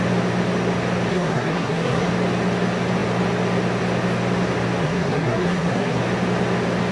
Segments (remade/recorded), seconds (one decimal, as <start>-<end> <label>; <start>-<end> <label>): 0.0-1.1 recorded; 1.1-2.1 remade; 2.1-4.8 recorded; 4.8-6.0 remade; 6.0-6.9 recorded